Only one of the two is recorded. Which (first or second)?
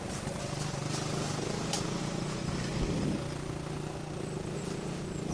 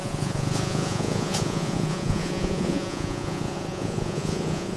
first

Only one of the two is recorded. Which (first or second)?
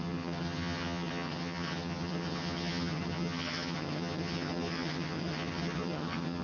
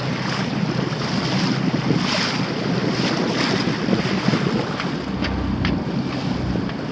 second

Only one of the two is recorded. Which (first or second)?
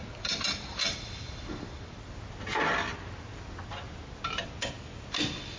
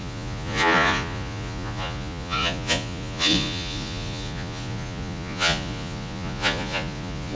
first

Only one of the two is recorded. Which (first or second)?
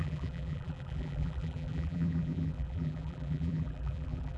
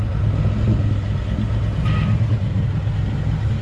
second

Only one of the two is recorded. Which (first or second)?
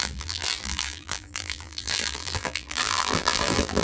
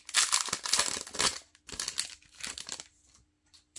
second